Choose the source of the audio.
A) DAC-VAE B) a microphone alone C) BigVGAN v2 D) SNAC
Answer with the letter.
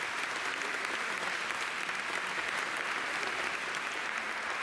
B